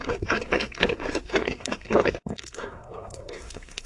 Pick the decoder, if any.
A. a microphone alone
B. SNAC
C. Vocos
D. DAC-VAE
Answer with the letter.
B